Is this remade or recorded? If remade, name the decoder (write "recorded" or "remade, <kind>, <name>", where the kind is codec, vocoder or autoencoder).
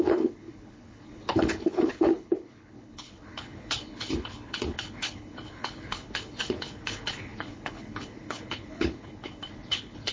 remade, codec, HILCodec